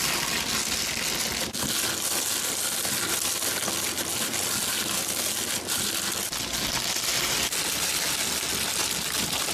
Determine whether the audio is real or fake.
real